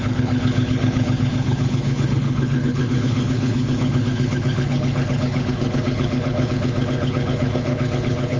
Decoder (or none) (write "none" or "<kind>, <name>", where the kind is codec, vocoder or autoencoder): codec, HILCodec